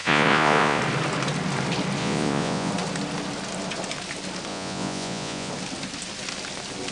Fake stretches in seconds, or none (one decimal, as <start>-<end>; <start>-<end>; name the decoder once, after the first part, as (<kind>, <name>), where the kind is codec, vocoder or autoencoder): 0.0-0.8 (vocoder, Vocos); 2.0-2.7; 4.5-5.5